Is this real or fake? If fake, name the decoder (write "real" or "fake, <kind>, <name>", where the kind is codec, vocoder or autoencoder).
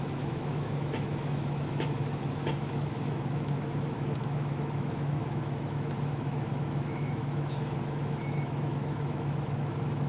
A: fake, autoencoder, DAC-VAE